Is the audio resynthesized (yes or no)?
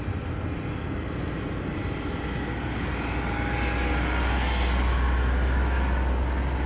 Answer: no